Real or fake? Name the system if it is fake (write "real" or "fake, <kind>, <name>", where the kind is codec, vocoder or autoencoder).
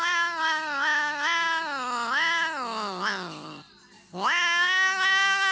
real